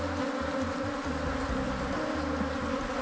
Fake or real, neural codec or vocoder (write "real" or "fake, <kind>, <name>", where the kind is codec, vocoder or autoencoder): real